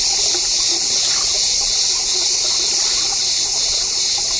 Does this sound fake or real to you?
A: real